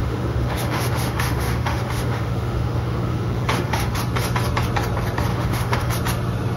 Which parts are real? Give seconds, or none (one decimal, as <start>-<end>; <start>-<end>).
4.0-5.3; 5.9-6.6